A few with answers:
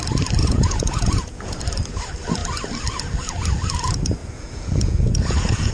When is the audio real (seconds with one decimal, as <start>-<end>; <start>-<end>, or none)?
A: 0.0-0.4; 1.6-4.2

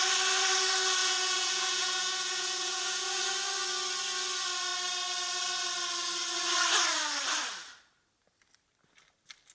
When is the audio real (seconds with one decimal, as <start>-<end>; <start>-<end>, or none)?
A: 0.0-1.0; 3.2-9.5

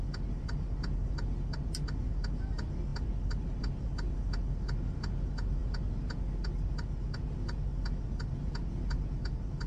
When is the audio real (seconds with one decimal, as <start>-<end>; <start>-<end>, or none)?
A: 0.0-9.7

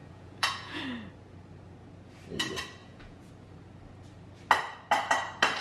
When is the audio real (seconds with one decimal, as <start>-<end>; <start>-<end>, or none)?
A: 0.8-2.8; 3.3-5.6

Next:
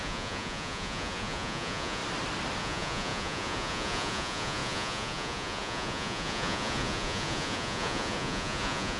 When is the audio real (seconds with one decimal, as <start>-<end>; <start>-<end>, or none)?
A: 2.0-2.6

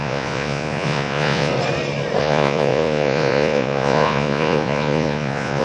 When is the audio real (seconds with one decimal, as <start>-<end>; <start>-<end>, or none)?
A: 1.5-2.2

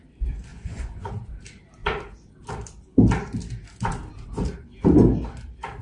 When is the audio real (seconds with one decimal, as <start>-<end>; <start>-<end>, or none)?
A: 0.0-0.5; 1.1-5.8

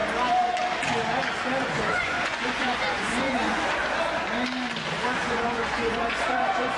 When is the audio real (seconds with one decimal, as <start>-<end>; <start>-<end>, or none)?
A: 0.0-1.6; 3.8-5.3